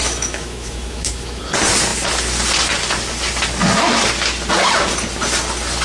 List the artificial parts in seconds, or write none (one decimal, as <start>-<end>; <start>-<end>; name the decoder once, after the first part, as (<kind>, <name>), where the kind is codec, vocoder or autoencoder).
0.0-1.4 (autoencoder, DAC-VAE)